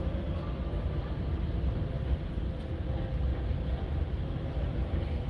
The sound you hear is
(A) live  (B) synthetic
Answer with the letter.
A